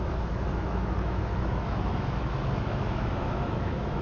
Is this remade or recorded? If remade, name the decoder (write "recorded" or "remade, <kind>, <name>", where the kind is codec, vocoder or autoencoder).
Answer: remade, autoencoder, DAC-VAE